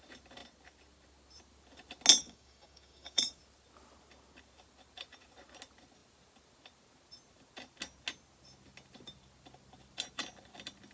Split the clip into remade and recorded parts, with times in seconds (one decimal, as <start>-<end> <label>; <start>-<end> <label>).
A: 0.0-2.2 recorded; 2.2-3.4 remade; 3.4-10.9 recorded